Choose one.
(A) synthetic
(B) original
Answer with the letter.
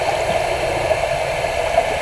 B